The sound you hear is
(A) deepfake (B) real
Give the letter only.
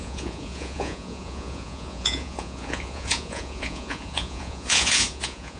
A